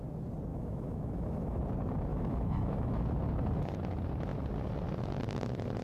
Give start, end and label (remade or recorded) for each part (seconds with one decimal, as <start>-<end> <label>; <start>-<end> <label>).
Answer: 0.0-0.5 recorded; 0.5-1.6 remade; 1.6-2.1 recorded; 2.1-3.0 remade; 3.0-5.8 recorded